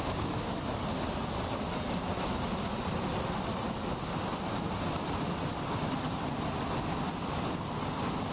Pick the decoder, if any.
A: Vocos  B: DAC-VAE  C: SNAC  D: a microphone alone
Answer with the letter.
D